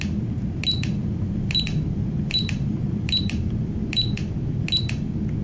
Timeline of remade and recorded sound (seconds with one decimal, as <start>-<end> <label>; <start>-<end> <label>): 0.0-1.0 recorded; 1.0-4.2 remade; 4.2-5.4 recorded